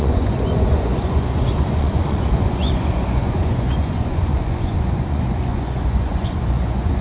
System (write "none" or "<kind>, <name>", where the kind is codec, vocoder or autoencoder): vocoder, Vocos